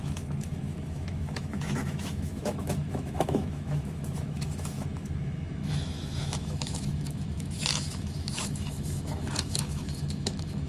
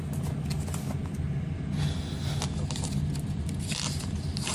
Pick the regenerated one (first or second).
first